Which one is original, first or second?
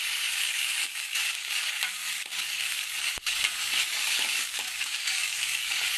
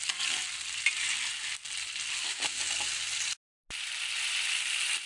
second